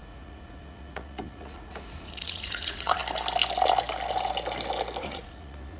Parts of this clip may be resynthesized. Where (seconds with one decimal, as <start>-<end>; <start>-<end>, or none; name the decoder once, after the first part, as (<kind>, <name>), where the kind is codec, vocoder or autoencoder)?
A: 0.0-3.0 (vocoder, Vocos); 5.0-5.8